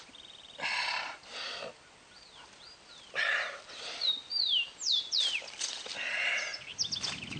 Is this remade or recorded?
recorded